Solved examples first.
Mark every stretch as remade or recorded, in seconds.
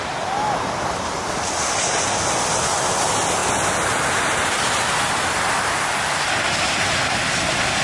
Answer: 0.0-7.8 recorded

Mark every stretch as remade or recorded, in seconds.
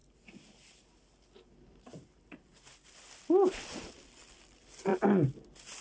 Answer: 0.0-5.8 recorded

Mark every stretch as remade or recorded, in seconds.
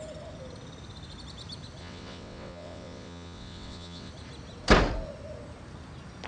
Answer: 0.0-1.8 recorded; 1.8-4.1 remade; 4.1-6.3 recorded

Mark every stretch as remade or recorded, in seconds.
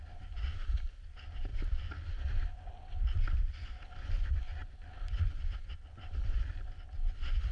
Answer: 0.0-7.5 recorded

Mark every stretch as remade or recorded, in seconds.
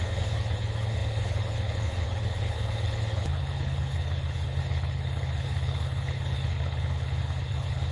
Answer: 0.0-7.9 remade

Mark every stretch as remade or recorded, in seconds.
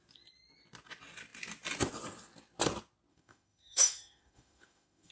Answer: 0.0-3.1 recorded; 3.1-5.1 remade